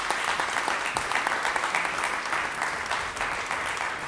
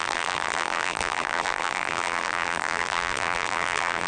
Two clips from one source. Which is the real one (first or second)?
first